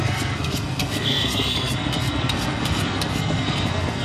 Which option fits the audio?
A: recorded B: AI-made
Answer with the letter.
B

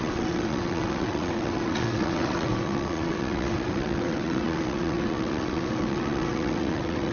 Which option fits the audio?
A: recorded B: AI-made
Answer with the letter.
B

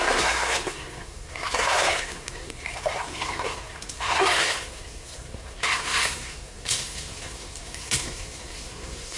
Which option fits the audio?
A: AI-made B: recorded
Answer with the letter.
A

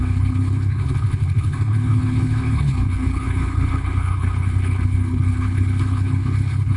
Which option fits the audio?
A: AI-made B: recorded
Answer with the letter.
A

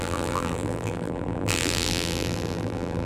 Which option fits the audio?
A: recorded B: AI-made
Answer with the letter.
B